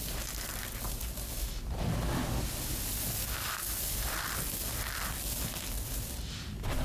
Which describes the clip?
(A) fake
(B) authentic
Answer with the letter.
B